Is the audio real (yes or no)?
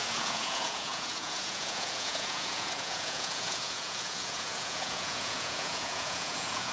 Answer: no